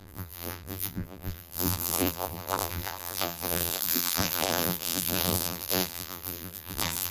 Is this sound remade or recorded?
remade